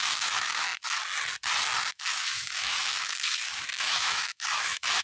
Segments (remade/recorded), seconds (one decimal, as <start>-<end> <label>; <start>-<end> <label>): 0.0-0.7 remade; 0.7-1.9 recorded; 1.9-5.0 remade